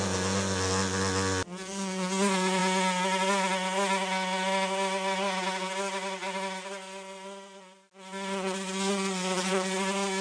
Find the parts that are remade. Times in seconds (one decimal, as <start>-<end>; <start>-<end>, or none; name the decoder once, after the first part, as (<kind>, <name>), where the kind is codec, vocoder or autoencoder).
none